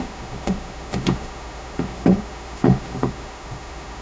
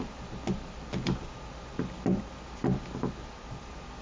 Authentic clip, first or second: second